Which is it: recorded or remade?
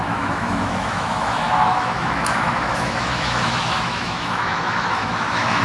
remade